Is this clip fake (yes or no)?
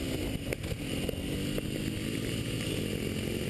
no